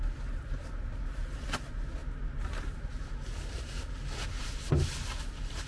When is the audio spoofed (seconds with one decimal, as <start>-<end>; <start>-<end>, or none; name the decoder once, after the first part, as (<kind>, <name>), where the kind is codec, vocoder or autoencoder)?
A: none